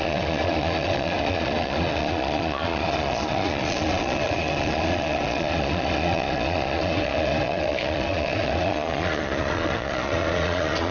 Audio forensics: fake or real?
fake